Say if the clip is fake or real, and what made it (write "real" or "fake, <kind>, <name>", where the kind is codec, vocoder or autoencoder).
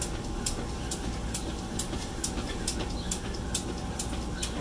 real